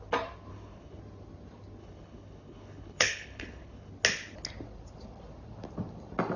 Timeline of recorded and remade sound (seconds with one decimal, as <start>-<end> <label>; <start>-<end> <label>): 0.0-0.5 recorded; 0.5-1.0 remade; 1.0-1.8 recorded; 1.8-3.9 remade; 3.9-6.4 recorded